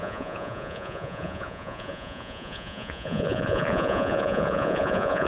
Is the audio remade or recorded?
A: remade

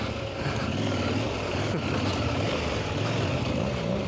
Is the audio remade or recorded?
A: recorded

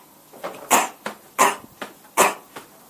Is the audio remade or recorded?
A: recorded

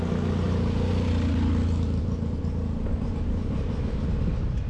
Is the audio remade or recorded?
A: recorded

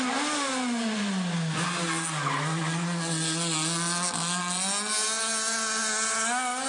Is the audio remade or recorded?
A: recorded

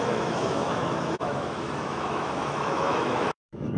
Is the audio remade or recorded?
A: remade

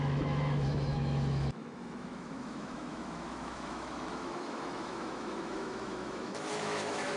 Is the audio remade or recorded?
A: remade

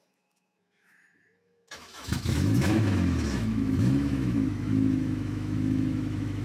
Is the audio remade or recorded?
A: remade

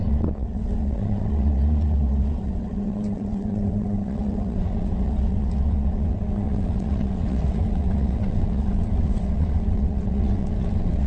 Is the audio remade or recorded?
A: remade